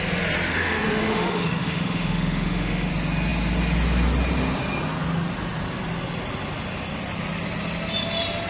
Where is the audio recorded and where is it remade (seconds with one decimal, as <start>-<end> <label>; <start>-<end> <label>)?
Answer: 0.0-0.5 recorded; 0.5-2.9 remade; 2.9-8.5 recorded